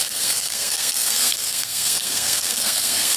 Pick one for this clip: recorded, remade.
remade